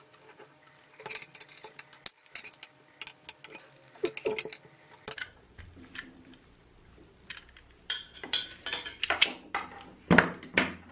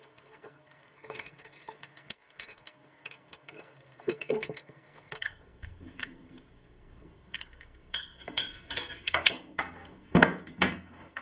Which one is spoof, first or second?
second